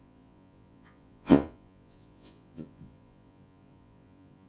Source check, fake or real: fake